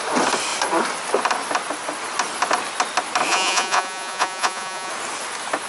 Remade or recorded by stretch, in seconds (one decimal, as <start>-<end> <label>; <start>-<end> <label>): 0.0-3.3 recorded; 3.3-4.9 remade; 4.9-5.7 recorded

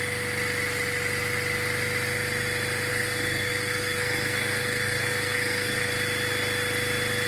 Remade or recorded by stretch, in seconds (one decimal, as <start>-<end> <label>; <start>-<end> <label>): 0.0-2.9 recorded; 2.9-5.9 remade; 5.9-7.3 recorded

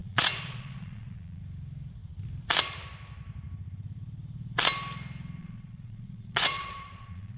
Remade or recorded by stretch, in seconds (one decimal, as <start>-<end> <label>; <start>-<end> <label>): 0.0-1.4 remade; 1.4-5.4 recorded; 5.4-7.4 remade

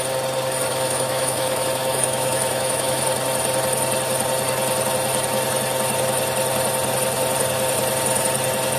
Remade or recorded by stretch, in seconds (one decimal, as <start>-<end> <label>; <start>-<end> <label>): 0.0-0.7 recorded; 0.7-3.0 remade; 3.0-8.8 recorded

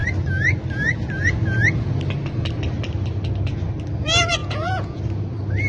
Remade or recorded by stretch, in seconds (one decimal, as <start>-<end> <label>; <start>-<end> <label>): 0.0-4.4 recorded; 4.4-5.0 remade; 5.0-5.7 recorded

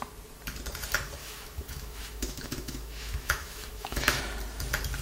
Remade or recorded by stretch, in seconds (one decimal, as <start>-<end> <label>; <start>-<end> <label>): 0.0-1.2 recorded; 1.2-4.2 remade; 4.2-5.0 recorded

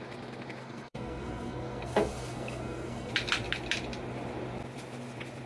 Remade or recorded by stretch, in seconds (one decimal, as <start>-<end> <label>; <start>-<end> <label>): 0.0-0.6 recorded; 0.6-3.1 remade; 3.1-5.5 recorded